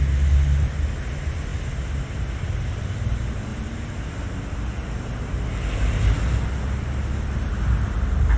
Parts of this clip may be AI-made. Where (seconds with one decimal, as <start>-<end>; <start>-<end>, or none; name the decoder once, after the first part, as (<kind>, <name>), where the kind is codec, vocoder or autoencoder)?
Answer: none